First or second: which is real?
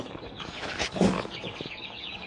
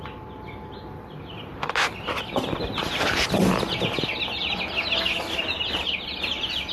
second